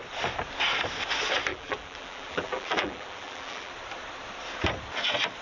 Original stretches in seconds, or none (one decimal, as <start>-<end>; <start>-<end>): 0.0-1.5; 3.7-5.4